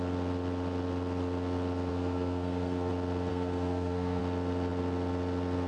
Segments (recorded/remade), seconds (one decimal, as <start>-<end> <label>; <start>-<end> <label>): 0.0-1.9 recorded; 1.9-2.9 remade; 2.9-3.3 recorded; 3.3-4.2 remade; 4.2-5.7 recorded

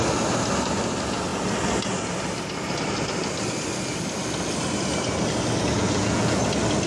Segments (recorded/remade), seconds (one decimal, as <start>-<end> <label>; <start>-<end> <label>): 0.0-5.7 recorded; 5.7-6.4 remade; 6.4-6.9 recorded

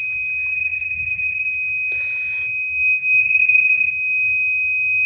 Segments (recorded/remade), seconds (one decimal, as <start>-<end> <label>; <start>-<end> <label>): 0.0-0.5 recorded; 0.5-1.5 remade; 1.5-3.2 recorded; 3.2-3.9 remade; 3.9-5.1 recorded

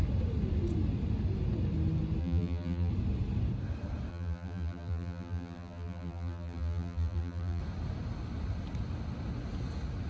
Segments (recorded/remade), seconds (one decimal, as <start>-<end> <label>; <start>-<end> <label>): 0.0-2.2 recorded; 2.2-2.9 remade; 2.9-4.1 recorded; 4.1-7.6 remade; 7.6-10.1 recorded

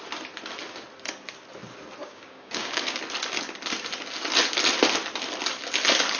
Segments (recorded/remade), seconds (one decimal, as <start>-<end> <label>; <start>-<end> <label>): 0.0-2.0 recorded; 2.0-3.0 remade; 3.0-6.2 recorded

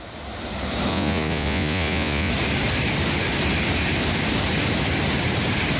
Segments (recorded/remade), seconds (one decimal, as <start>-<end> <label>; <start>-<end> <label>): 0.0-0.9 recorded; 0.9-2.3 remade; 2.3-5.8 recorded